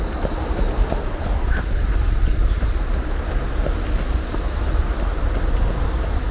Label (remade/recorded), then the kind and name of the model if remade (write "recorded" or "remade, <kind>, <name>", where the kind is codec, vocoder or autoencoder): recorded